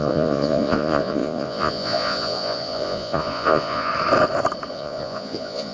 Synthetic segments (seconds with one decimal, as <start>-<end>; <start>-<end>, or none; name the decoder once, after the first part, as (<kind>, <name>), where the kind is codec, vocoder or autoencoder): 0.0-3.9 (vocoder, Vocos); 4.7-5.7